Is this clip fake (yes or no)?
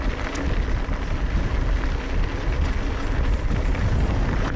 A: no